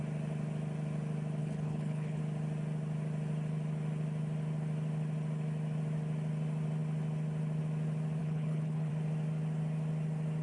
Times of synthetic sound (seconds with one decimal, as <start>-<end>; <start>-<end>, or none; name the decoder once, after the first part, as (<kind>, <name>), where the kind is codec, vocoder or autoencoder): 1.4-2.2 (codec, HILCodec); 8.2-8.9